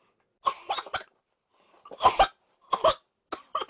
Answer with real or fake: real